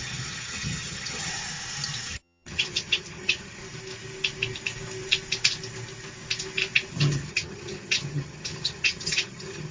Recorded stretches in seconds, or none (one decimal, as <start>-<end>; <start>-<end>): 1.3-2.1; 3.6-6.9